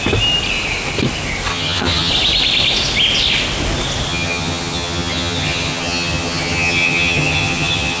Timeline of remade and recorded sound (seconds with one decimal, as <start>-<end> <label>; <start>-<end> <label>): 0.0-1.5 recorded; 1.5-2.1 remade; 2.1-4.1 recorded; 4.1-8.0 remade